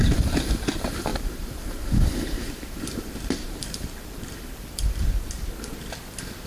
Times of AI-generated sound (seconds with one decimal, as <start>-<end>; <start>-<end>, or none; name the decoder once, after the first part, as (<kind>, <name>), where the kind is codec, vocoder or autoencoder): 1.1-5.0 (vocoder, BigVGAN v2)